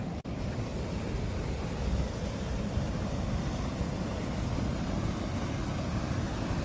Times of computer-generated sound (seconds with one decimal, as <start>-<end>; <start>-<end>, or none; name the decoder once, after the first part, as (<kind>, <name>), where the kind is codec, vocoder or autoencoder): none